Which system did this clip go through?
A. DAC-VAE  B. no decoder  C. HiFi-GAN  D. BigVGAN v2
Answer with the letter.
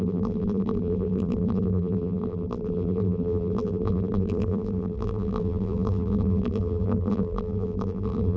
D